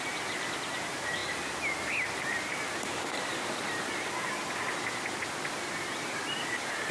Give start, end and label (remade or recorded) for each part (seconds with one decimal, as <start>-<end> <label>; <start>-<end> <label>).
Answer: 0.0-1.2 remade; 1.2-1.9 recorded; 1.9-2.5 remade; 2.5-5.9 recorded; 5.9-6.9 remade